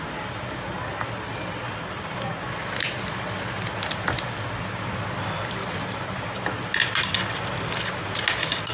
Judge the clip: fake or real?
real